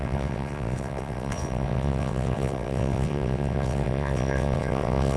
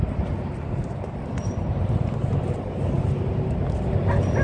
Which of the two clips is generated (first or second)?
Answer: first